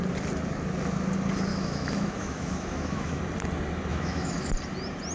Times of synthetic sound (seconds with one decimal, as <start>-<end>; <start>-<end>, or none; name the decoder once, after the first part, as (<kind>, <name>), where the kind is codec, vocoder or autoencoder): 1.5-3.2 (autoencoder, DAC-VAE); 3.9-4.5